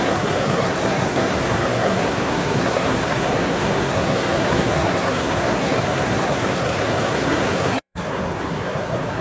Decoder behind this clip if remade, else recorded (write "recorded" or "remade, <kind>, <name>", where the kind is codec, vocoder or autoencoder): remade, codec, SNAC